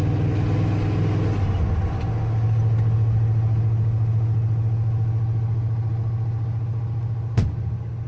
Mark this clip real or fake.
real